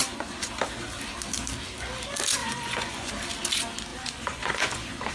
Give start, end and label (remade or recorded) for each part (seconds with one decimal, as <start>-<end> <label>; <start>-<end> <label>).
0.0-0.5 remade; 0.5-2.4 recorded; 2.4-3.1 remade; 3.1-3.9 recorded; 3.9-5.1 remade

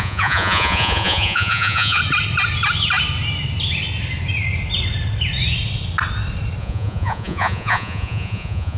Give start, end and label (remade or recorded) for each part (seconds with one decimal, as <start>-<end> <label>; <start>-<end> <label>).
0.0-2.0 remade; 2.0-6.6 recorded; 6.6-8.8 remade

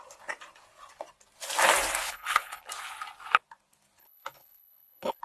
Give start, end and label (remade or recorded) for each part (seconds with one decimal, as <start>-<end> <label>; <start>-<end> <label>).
0.0-2.0 recorded; 2.0-2.6 remade; 2.6-4.0 recorded; 4.0-5.2 remade

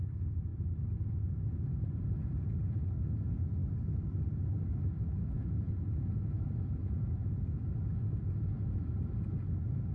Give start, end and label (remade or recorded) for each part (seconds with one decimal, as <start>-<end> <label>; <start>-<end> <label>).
0.0-0.5 remade; 0.5-1.1 recorded; 1.1-3.6 remade; 3.6-5.2 recorded; 5.2-9.9 remade